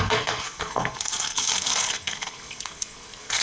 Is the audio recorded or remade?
remade